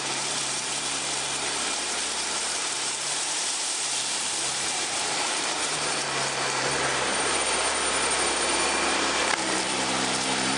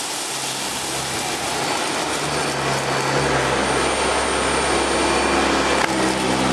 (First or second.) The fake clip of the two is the first